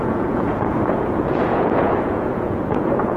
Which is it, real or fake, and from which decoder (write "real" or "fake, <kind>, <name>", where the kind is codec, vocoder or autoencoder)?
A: fake, vocoder, Vocos